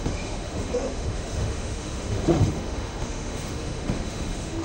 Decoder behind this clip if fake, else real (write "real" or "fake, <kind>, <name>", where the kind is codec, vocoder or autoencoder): fake, autoencoder, DAC-VAE